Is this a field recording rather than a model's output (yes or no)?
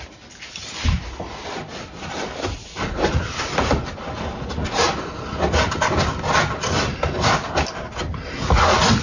yes